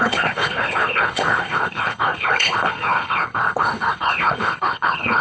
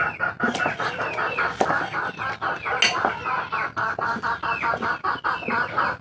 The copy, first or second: first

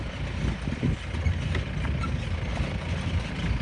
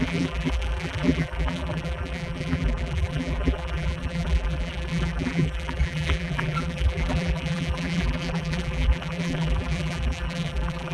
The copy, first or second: second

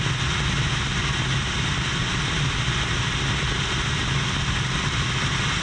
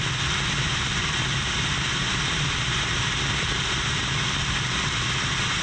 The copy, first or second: second